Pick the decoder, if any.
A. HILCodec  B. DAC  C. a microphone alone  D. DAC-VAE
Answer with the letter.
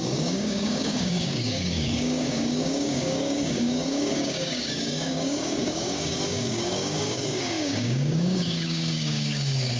B